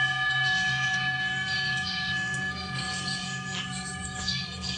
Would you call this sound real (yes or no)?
no